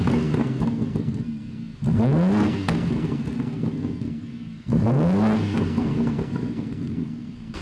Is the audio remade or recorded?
remade